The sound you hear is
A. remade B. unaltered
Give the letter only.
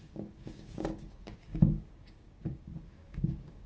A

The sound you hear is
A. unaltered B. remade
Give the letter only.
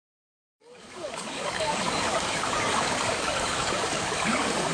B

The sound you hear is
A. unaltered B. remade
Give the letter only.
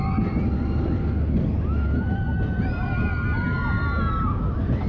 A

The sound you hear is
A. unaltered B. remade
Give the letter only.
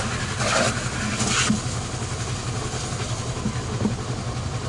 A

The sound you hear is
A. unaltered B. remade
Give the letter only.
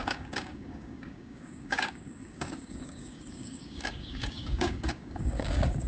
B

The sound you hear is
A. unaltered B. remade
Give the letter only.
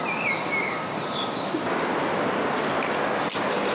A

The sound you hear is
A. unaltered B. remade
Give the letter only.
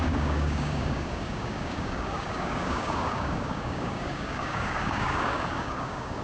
B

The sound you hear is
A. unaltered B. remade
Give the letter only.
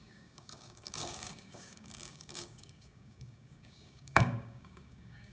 B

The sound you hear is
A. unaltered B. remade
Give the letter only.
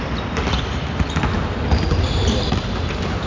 A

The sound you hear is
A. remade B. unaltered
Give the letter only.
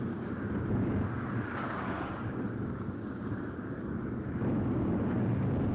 A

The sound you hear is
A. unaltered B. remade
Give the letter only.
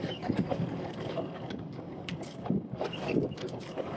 B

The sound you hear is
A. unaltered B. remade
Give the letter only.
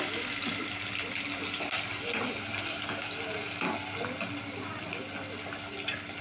A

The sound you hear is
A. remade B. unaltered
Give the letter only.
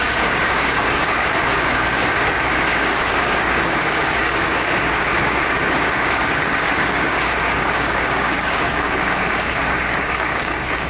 A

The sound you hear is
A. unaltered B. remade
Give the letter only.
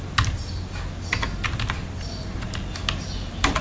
A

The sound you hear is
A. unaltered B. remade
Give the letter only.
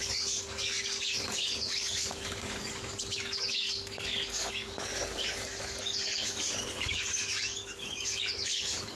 B